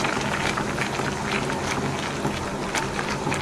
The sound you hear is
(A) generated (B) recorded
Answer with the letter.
B